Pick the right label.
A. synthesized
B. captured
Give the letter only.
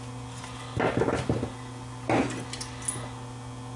B